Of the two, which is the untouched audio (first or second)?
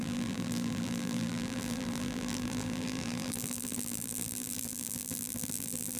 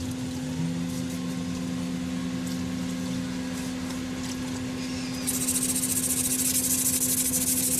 second